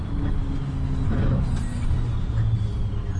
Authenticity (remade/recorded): recorded